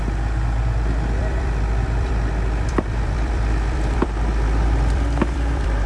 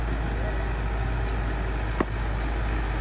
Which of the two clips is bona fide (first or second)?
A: second